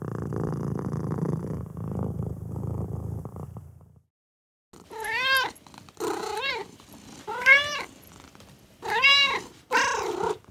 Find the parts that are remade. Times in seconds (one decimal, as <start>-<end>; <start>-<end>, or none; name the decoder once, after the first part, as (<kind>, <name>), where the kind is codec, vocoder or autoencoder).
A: 1.7-3.2 (vocoder, BigVGAN v2); 6.6-9.7